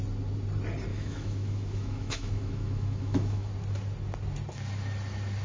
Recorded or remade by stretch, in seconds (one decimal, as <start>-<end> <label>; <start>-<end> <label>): 0.0-0.9 recorded; 0.9-3.5 remade; 3.5-5.4 recorded